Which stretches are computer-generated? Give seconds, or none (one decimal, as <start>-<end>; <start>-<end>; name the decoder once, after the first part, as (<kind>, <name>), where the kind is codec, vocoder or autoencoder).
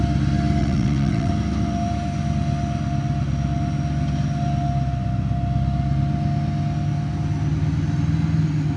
0.6-1.3 (vocoder, WaveNeXt)